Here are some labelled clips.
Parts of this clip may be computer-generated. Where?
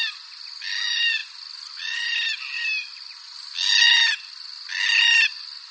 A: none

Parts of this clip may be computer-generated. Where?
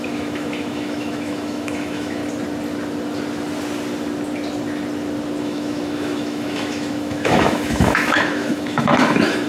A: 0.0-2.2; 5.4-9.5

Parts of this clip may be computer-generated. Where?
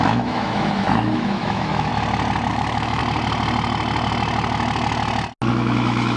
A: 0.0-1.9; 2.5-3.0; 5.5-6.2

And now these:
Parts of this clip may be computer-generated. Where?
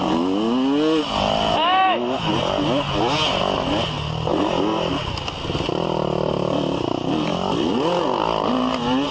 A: 1.6-2.3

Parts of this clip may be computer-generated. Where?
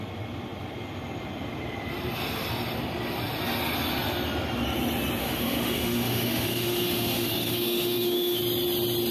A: 5.2-8.4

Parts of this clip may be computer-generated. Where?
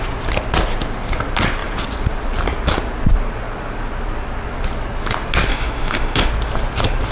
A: 5.5-6.3